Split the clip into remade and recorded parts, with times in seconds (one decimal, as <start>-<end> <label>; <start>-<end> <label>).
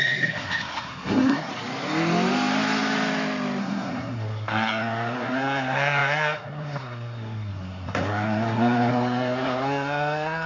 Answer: 0.0-1.5 remade; 1.5-3.6 recorded; 3.6-10.5 remade